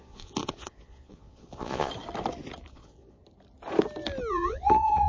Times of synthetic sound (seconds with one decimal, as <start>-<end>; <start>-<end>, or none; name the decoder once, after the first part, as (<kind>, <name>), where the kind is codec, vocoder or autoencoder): 0.0-1.9 (vocoder, Vocos); 2.7-3.2; 4.3-5.1